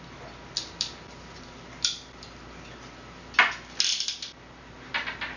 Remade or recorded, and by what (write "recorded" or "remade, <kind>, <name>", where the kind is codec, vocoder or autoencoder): recorded